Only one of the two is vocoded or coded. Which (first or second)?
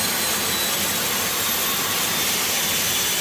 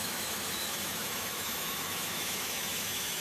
second